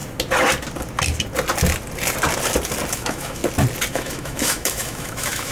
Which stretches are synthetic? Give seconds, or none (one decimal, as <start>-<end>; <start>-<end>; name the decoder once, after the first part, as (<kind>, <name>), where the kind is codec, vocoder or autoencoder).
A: 2.9-3.4 (autoencoder, DAC-VAE); 3.9-5.5